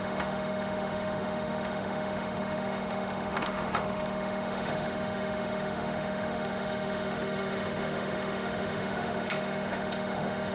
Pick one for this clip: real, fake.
fake